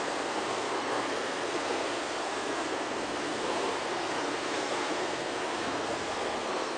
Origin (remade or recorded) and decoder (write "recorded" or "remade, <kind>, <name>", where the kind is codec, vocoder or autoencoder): remade, codec, SNAC